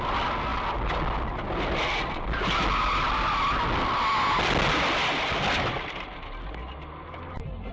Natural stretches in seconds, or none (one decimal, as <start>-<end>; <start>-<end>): 0.0-7.7